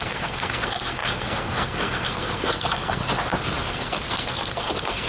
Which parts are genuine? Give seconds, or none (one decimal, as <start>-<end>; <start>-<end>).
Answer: 3.0-3.7